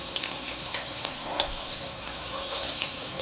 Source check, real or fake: fake